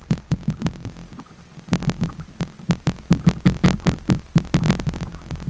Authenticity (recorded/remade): recorded